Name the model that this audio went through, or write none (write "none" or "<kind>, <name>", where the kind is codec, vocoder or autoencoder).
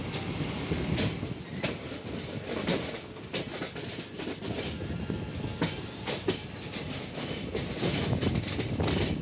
none